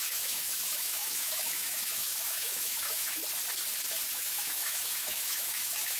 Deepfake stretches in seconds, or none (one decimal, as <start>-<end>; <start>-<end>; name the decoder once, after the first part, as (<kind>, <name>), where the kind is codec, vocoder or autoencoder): 0.0-3.2 (autoencoder, DAC-VAE); 4.1-6.0